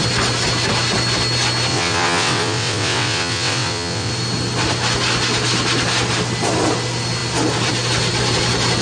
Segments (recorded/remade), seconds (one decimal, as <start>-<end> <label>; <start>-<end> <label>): 0.0-1.7 recorded; 1.7-4.1 remade; 4.1-8.8 recorded